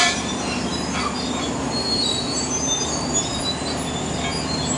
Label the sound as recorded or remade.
recorded